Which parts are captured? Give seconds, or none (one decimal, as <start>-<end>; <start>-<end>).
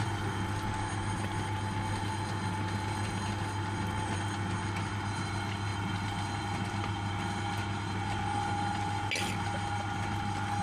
0.0-10.6